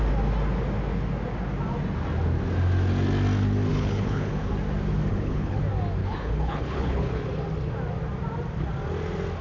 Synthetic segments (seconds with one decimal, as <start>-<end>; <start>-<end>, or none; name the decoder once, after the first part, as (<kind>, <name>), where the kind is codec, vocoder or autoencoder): 3.7-4.5 (codec, HILCodec); 5.1-5.6; 6.0-7.2